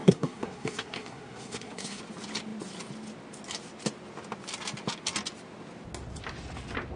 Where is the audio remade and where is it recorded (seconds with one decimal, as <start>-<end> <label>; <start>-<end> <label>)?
0.0-2.0 remade; 2.0-7.0 recorded